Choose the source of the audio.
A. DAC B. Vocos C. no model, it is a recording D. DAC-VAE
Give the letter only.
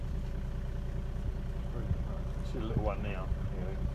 C